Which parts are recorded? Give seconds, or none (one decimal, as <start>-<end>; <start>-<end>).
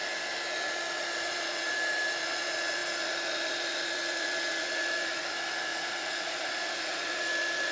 0.0-5.7; 7.1-7.7